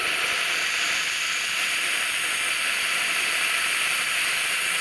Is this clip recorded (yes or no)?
yes